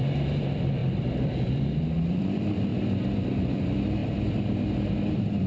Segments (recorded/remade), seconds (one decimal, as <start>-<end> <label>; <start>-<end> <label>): 0.0-2.7 remade; 2.7-3.4 recorded; 3.4-5.5 remade